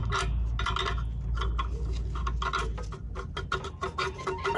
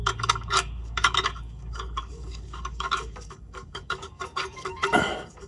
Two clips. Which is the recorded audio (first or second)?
first